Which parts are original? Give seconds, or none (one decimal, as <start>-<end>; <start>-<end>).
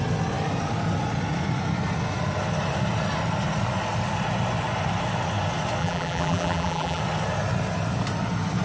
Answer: 0.0-5.8; 7.0-8.6